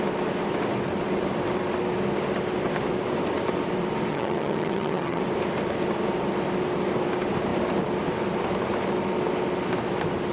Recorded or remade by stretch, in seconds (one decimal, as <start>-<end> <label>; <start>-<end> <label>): 0.0-4.1 recorded; 4.1-5.2 remade; 5.2-10.3 recorded